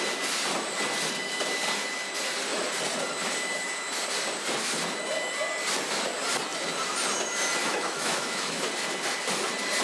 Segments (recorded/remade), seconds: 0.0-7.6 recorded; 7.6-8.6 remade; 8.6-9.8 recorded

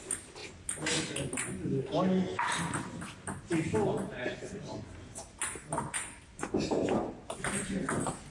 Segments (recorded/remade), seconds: 0.0-8.3 recorded

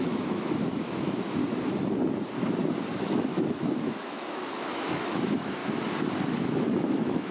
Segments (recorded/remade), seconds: 0.0-1.4 remade; 1.4-3.0 recorded; 3.0-5.6 remade; 5.6-6.4 recorded; 6.4-7.3 remade

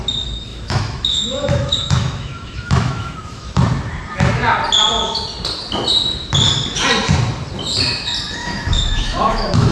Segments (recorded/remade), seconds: 0.0-0.5 recorded; 0.5-3.5 remade; 3.5-8.4 recorded; 8.4-9.7 remade

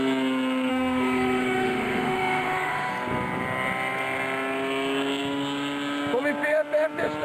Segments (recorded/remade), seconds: 0.0-0.7 recorded; 0.7-2.9 remade; 2.9-7.2 recorded